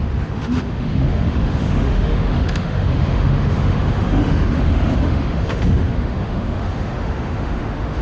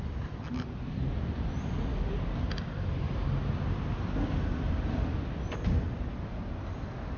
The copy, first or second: first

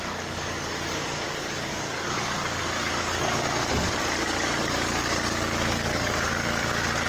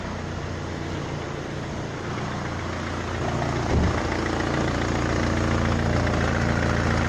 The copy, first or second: first